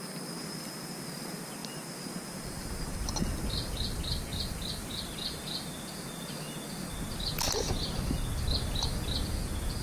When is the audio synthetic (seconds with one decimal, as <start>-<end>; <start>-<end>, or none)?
4.3-5.0